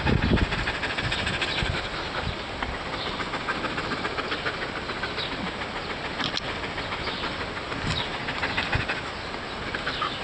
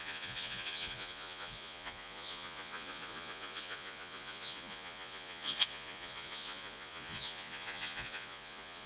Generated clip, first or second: second